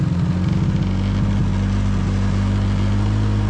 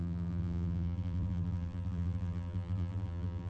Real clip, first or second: first